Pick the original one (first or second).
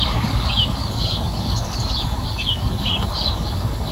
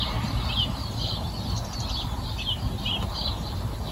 second